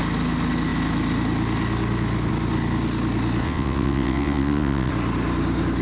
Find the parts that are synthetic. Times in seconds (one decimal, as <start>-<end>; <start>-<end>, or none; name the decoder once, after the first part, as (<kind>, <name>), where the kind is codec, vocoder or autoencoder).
3.4-4.9 (vocoder, WaveNeXt)